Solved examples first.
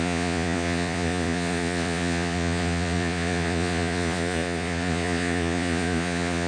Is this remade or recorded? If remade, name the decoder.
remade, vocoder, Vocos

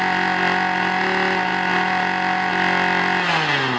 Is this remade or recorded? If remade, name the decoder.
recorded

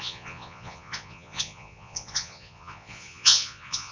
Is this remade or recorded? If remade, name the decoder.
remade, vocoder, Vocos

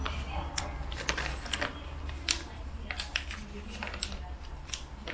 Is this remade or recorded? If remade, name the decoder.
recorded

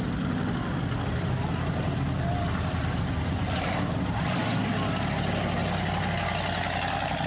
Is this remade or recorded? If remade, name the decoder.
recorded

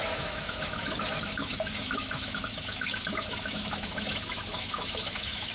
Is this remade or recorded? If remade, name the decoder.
remade, autoencoder, DAC-VAE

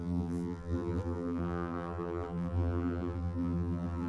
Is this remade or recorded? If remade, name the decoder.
remade, vocoder, BigVGAN v2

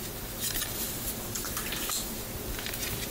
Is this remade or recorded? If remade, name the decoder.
recorded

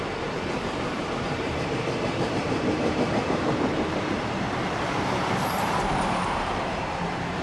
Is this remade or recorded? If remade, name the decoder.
remade, vocoder, BigVGAN v2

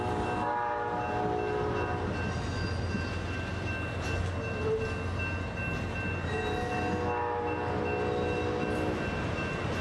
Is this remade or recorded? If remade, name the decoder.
recorded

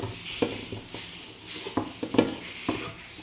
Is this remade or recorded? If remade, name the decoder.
recorded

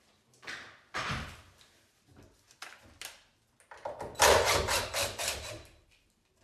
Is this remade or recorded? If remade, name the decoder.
recorded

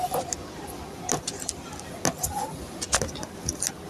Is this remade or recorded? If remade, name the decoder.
recorded